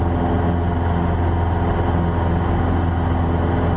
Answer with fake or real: real